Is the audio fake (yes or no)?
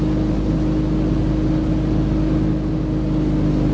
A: no